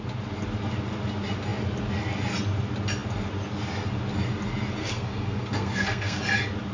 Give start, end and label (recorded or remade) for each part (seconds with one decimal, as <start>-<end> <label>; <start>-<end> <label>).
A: 0.0-4.8 recorded; 4.8-6.2 remade; 6.2-6.7 recorded